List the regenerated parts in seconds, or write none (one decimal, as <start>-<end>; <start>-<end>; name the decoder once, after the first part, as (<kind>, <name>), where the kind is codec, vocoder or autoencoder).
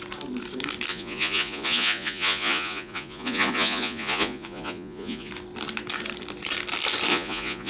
0.9-5.3 (vocoder, Vocos); 7.1-7.7